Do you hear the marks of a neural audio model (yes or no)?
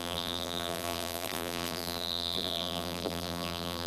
yes